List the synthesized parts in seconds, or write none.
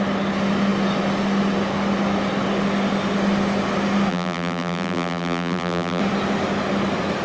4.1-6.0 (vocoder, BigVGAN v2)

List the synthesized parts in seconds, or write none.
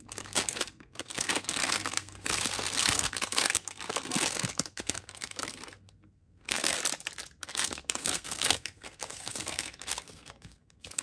0.0-6.8 (codec, SNAC); 7.4-11.0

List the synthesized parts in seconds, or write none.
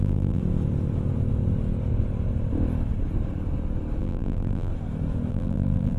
0.0-0.4 (vocoder, BigVGAN v2); 4.0-4.7; 5.3-6.0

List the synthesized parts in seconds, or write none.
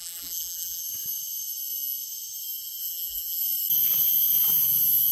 0.0-0.8 (vocoder, BigVGAN v2); 2.8-3.4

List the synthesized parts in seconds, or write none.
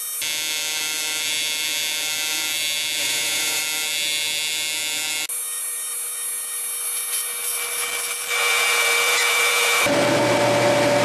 3.0-3.6 (vocoder, Vocos); 8.4-9.8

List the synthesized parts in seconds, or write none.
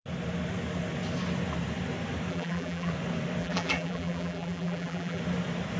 2.3-2.9 (vocoder, BigVGAN v2); 3.4-5.2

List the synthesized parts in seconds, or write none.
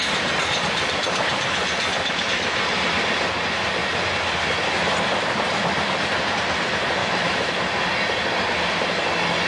7.0-7.6 (autoencoder, DAC-VAE)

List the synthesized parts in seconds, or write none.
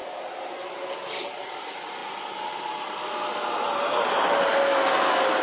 0.0-0.9 (vocoder, BigVGAN v2)